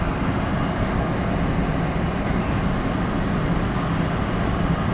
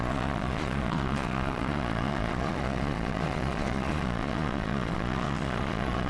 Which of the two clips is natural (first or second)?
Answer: first